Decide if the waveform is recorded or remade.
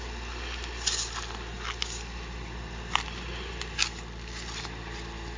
recorded